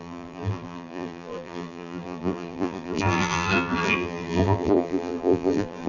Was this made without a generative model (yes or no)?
no